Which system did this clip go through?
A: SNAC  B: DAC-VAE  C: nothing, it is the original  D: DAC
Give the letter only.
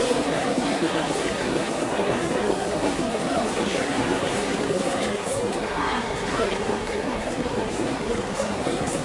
A